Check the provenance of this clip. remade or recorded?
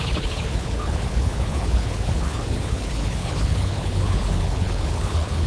remade